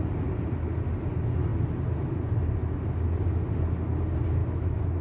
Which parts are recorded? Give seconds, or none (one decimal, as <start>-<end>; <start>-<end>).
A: 0.0-4.4